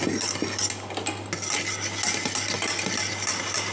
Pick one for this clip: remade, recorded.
recorded